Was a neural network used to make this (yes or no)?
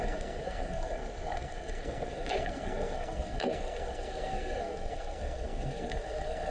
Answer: yes